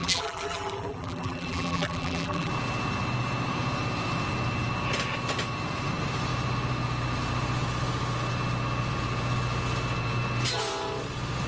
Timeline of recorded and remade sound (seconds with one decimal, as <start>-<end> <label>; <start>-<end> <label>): 0.0-2.5 remade; 2.5-11.5 recorded